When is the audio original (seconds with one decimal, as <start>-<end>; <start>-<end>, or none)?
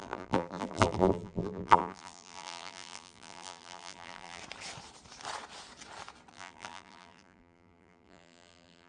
4.4-6.3